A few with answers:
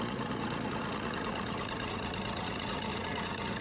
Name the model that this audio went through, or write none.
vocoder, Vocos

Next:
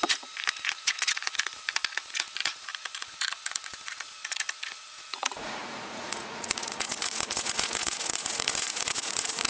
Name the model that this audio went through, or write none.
vocoder, Vocos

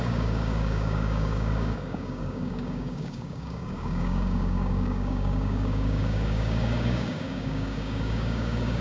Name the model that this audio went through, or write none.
codec, DAC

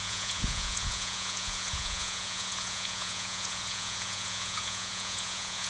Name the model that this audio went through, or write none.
vocoder, Vocos